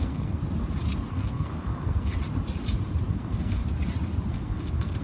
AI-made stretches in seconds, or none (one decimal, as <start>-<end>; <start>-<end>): 0.0-0.4; 1.1-2.1; 3.1-3.6; 4.3-5.0